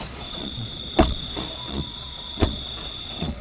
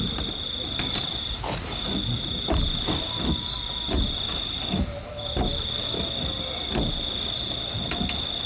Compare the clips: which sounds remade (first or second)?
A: first